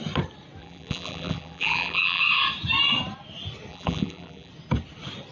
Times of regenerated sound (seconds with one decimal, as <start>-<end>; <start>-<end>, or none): 0.6-2.2; 3.7-4.5